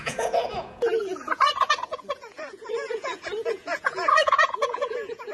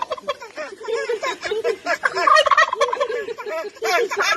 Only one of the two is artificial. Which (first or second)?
first